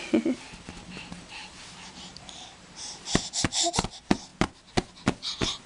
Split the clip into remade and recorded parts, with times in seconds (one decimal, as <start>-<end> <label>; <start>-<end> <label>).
0.0-1.4 recorded; 1.4-3.9 remade; 3.9-5.7 recorded